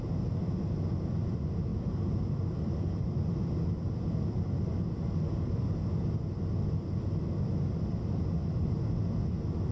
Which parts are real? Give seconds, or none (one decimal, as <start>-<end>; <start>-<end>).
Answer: 0.0-9.7